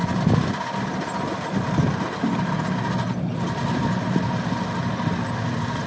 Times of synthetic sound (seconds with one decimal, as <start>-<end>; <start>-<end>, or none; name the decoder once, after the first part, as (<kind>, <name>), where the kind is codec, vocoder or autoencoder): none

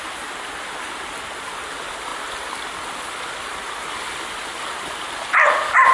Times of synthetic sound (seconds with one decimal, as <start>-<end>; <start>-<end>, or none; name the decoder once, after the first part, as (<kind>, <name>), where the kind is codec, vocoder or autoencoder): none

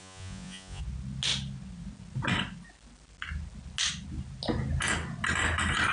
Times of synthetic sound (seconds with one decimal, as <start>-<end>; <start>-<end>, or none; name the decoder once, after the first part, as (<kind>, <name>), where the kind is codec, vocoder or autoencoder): 0.0-0.8 (vocoder, Vocos)